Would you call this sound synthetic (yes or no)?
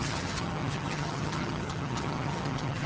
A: yes